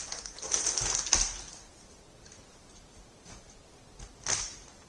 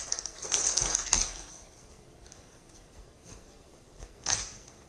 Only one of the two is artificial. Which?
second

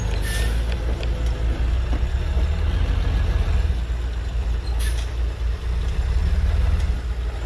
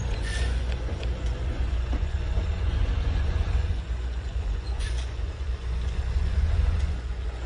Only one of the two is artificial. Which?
second